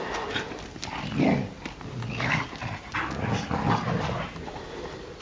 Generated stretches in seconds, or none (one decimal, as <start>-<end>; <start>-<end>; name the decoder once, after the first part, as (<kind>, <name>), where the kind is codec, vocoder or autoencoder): none